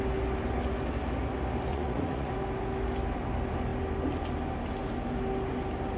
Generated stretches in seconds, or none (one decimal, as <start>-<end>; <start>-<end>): 1.7-2.3